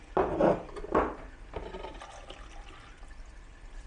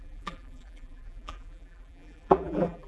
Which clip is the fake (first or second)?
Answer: second